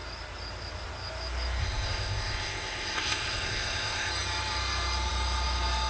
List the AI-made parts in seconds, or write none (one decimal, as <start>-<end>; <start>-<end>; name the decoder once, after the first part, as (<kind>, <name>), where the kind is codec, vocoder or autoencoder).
1.6-4.1 (codec, ZipCodec)

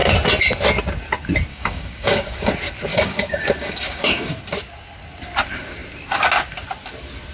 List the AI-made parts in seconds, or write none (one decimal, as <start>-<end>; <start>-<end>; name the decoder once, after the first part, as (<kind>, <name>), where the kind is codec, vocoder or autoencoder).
1.5-2.5 (codec, DAC); 2.9-4.3

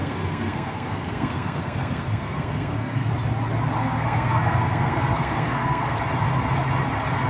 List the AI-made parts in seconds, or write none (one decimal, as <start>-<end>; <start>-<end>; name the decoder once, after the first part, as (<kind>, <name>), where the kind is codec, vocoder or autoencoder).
0.0-3.1 (codec, SNAC); 3.8-6.0